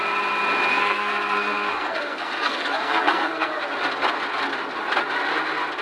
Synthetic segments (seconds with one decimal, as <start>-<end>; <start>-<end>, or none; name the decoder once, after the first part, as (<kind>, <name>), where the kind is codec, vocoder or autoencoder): 0.7-3.6 (codec, SNAC)